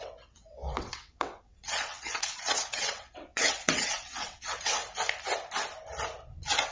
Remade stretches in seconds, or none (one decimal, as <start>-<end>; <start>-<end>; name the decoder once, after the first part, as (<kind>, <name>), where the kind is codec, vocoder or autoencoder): 0.0-4.8 (vocoder, WaveNeXt)